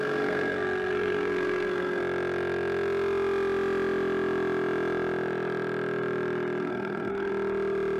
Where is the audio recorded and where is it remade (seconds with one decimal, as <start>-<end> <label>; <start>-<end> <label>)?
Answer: 0.0-2.0 remade; 2.0-6.6 recorded; 6.6-7.3 remade; 7.3-8.0 recorded